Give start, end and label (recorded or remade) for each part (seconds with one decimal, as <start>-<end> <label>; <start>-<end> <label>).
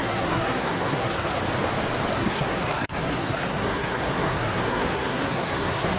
0.0-1.4 remade; 1.4-2.1 recorded; 2.1-6.0 remade